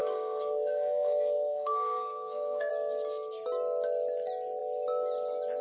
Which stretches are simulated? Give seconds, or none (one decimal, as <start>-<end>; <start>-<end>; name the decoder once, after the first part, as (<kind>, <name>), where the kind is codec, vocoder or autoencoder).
0.0-2.7 (codec, SNAC)